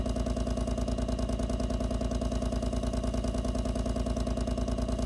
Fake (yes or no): no